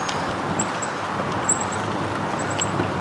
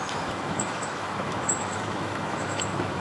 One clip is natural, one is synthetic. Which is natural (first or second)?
first